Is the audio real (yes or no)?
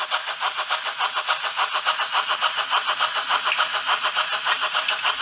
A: yes